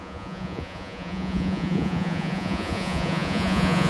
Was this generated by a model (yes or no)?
yes